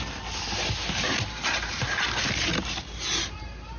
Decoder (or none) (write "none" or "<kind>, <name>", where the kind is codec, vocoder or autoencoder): none